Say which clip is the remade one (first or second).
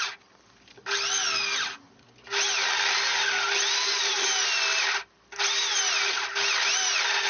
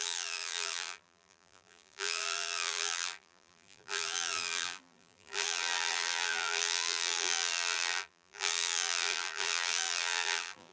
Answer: second